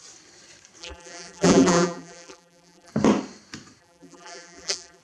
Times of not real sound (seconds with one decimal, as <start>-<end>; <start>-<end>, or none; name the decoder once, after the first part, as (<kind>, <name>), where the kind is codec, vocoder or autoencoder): 0.8-2.9 (vocoder, BigVGAN v2); 3.8-5.0